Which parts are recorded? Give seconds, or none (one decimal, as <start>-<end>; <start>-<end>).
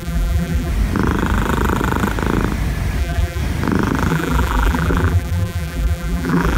0.7-3.0; 3.4-4.1